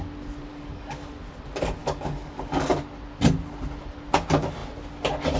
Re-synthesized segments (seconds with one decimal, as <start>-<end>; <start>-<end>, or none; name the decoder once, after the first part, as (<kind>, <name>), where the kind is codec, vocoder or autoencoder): 0.5-1.1 (codec, DAC); 1.8-2.8